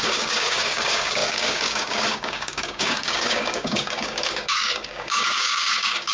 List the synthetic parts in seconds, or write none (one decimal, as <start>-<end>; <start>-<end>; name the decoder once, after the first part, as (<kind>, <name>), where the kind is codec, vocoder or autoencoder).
0.0-6.1 (codec, DAC)